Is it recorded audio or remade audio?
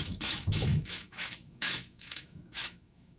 remade